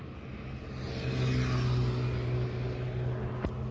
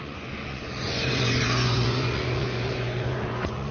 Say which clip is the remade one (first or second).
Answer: second